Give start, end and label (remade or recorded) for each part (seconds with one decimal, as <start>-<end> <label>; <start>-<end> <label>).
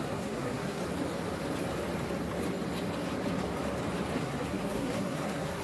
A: 0.0-0.8 remade; 0.8-4.2 recorded; 4.2-5.6 remade